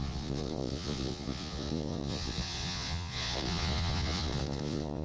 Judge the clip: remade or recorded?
remade